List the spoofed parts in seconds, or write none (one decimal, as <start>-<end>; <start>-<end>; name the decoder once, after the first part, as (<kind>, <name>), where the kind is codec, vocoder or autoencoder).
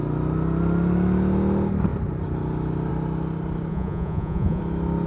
3.7-4.6 (vocoder, Vocos)